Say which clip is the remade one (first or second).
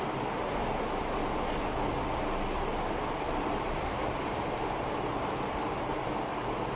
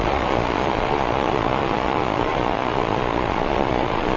second